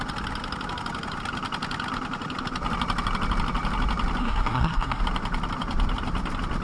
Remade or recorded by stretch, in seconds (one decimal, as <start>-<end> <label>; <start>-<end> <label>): 0.0-4.2 recorded; 4.2-5.0 remade; 5.0-6.6 recorded